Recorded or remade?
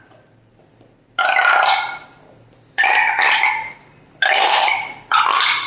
recorded